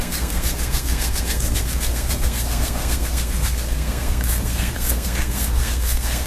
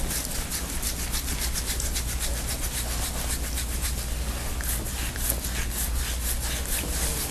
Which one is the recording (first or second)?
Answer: second